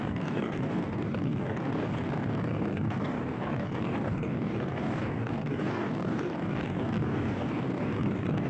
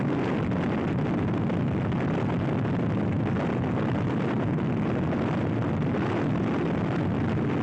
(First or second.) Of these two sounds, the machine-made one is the first